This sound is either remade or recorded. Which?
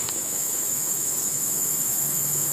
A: remade